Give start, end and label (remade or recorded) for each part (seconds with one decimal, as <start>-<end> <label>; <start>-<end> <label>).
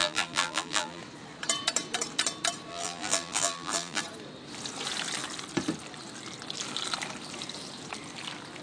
0.0-1.0 remade; 1.0-2.7 recorded; 2.7-4.0 remade; 4.0-8.6 recorded